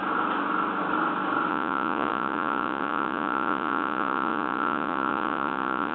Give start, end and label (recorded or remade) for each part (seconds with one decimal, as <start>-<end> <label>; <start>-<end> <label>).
0.0-1.5 recorded; 1.5-5.9 remade